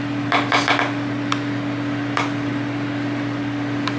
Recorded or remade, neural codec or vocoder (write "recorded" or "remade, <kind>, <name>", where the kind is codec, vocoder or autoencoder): recorded